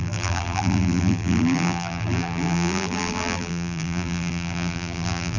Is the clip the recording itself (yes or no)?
no